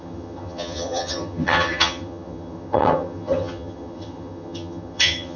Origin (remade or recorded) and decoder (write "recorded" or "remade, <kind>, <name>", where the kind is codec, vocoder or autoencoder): remade, vocoder, HiFi-GAN